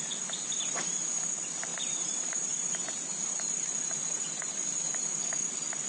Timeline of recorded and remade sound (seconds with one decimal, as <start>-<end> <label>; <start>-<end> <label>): 0.0-1.7 recorded; 1.7-5.2 remade; 5.2-5.9 recorded